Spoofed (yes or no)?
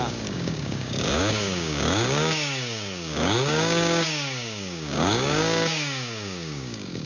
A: yes